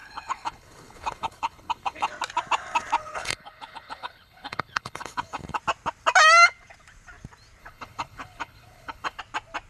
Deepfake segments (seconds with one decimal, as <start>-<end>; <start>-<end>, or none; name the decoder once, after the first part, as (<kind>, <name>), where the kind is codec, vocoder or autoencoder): 0.0-2.1 (codec, HILCodec); 3.0-5.6; 7.6-9.2